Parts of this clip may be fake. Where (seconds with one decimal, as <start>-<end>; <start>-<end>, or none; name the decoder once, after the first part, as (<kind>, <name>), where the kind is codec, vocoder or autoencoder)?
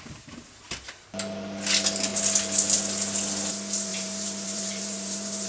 3.9-5.5 (vocoder, BigVGAN v2)